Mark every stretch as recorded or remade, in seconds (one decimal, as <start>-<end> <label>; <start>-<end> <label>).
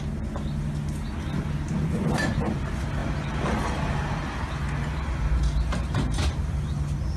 0.0-3.0 recorded; 3.0-6.7 remade; 6.7-7.2 recorded